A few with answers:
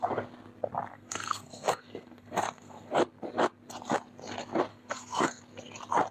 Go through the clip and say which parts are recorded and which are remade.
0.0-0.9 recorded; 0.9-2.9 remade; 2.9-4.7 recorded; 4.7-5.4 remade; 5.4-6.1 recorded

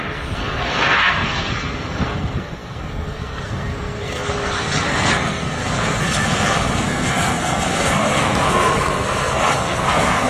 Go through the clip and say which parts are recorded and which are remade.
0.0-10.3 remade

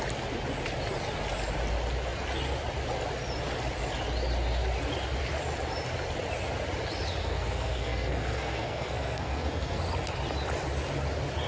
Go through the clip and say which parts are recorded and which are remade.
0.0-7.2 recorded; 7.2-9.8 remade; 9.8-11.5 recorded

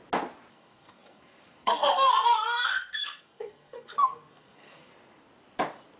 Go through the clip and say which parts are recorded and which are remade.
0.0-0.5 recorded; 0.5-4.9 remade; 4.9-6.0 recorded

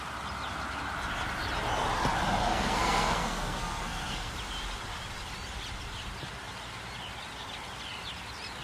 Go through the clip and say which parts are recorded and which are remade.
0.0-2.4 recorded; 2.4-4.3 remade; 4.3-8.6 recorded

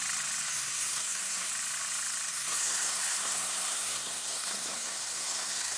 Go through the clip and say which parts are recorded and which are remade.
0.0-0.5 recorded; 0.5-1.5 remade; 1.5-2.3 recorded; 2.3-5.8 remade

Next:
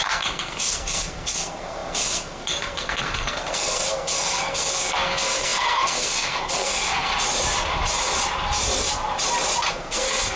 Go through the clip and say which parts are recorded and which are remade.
0.0-7.1 remade; 7.1-9.7 recorded; 9.7-10.4 remade